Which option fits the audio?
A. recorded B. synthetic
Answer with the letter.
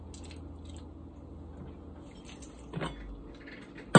A